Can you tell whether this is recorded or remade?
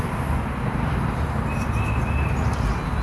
recorded